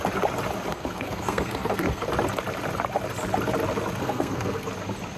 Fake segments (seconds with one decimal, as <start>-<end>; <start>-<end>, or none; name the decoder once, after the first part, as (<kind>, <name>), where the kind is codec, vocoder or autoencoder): 0.7-2.1 (codec, SNAC); 4.0-4.7